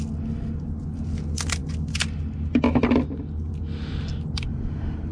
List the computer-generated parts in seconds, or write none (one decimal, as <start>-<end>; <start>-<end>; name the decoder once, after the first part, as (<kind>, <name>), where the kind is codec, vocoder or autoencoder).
none

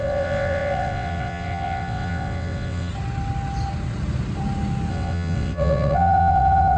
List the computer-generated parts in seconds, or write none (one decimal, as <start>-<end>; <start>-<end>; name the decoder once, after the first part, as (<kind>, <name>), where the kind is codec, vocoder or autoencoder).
0.0-2.9 (vocoder, WaveNeXt); 4.9-6.8

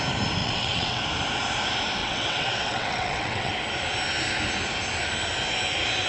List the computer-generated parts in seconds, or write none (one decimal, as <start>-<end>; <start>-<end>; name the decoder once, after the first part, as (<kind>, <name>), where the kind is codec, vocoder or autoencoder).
0.4-1.0 (vocoder, WaveNeXt); 2.0-3.5

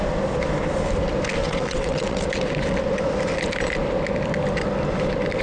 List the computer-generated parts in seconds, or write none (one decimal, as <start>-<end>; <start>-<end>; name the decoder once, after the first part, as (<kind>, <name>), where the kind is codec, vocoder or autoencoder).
1.4-2.2 (vocoder, WaveNeXt)